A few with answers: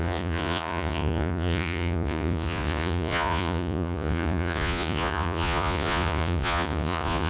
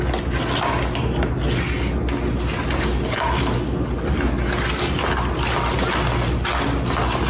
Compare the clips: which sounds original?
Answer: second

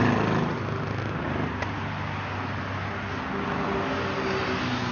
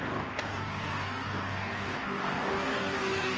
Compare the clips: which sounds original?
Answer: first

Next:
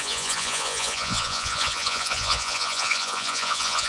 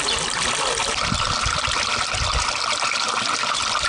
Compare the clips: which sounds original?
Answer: second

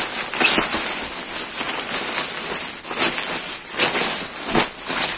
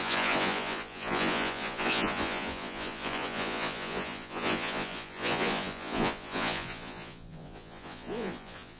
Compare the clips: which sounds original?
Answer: first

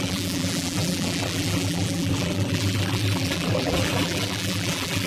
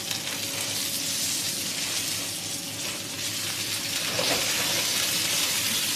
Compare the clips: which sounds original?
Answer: second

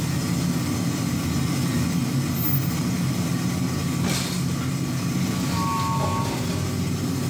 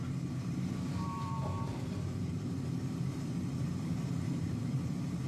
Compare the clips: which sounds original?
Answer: first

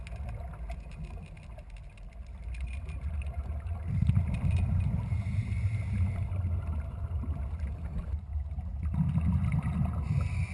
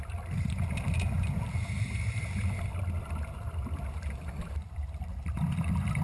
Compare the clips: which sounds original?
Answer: first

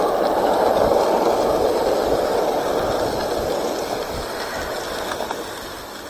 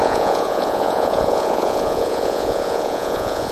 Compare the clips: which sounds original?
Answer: first